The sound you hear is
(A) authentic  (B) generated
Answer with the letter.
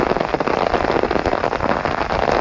A